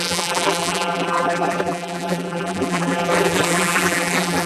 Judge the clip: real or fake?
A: fake